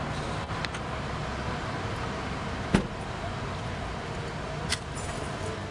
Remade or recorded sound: recorded